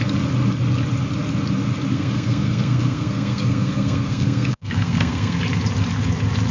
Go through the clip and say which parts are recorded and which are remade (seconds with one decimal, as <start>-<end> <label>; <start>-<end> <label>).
0.0-1.9 recorded; 1.9-5.4 remade; 5.4-6.5 recorded